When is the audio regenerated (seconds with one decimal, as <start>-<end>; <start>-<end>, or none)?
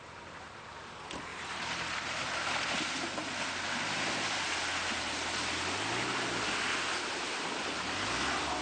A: 1.3-2.8